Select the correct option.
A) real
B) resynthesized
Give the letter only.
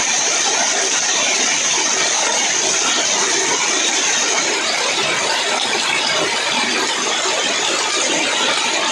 A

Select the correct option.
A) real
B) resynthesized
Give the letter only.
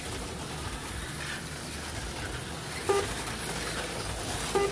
A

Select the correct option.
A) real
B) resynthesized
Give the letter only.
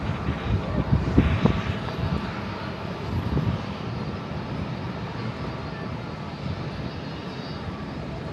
A